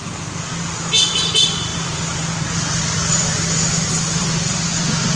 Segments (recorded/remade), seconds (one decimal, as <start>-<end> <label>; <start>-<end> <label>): 0.0-5.2 recorded